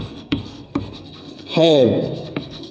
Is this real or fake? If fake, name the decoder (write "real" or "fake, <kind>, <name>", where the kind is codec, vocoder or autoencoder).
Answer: fake, codec, SNAC